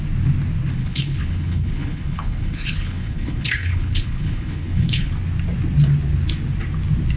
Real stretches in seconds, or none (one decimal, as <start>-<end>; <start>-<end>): 0.0-0.8; 5.1-7.2